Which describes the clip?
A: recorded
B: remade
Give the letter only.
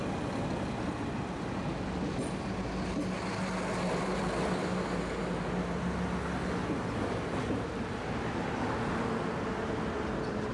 A